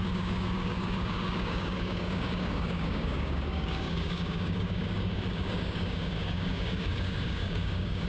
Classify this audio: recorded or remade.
remade